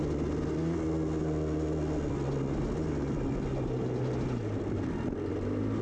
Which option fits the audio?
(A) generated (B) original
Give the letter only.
B